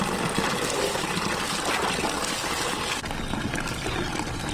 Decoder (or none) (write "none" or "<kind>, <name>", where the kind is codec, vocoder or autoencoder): none